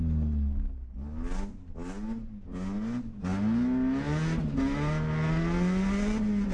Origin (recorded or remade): recorded